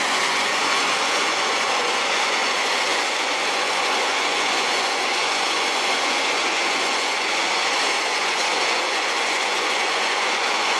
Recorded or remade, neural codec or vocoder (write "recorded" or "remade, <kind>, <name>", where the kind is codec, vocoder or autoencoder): remade, vocoder, Vocos